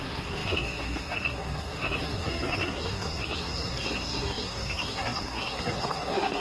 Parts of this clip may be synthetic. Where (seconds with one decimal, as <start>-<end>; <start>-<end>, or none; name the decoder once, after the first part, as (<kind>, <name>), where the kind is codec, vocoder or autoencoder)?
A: 0.0-6.4 (codec, SNAC)